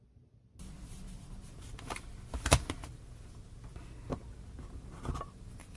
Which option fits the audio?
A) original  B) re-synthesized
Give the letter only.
A